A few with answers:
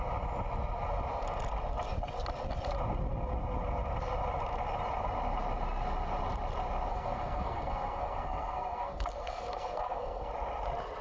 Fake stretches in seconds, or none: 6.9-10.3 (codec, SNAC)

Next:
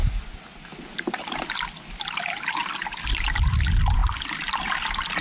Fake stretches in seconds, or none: none